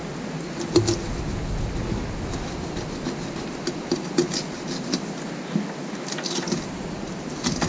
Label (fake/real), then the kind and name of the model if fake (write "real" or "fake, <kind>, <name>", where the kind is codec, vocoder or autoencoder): real